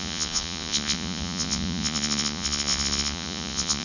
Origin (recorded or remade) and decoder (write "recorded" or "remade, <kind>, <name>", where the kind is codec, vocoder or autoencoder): remade, vocoder, Vocos